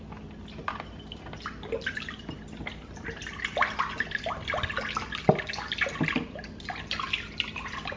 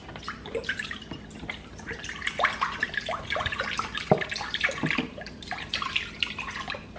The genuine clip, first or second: first